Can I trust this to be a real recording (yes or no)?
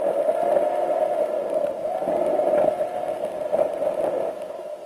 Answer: yes